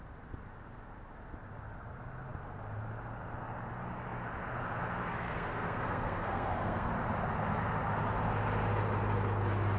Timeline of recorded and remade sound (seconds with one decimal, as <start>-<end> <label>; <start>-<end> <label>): 0.0-5.0 recorded; 5.0-6.9 remade; 6.9-9.8 recorded